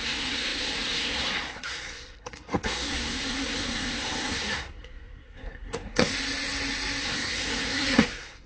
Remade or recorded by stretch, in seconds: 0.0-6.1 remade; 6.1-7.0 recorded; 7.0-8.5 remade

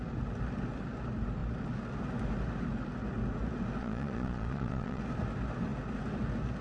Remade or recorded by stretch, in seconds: 0.0-3.8 recorded; 3.8-5.0 remade; 5.0-6.6 recorded

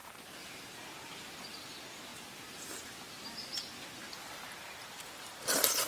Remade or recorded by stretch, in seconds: 0.0-0.6 remade; 0.6-5.9 recorded

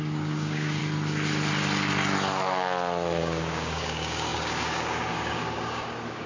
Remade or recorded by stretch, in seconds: 0.0-0.8 remade; 0.8-3.2 recorded; 3.2-6.3 remade

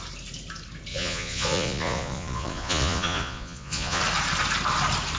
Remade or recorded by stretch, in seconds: 0.0-0.9 recorded; 0.9-4.0 remade; 4.0-5.2 recorded